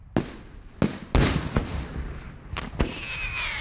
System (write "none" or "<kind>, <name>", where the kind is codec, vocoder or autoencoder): none